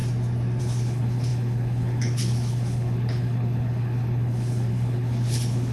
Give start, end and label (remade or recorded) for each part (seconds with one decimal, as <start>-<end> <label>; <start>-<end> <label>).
0.0-0.6 recorded; 0.6-5.7 remade